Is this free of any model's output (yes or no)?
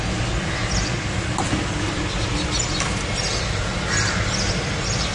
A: yes